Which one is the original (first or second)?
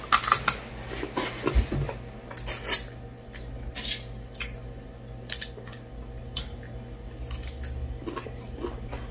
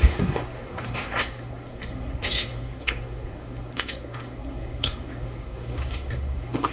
first